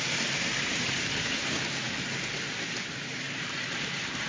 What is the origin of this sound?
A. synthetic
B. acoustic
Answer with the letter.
A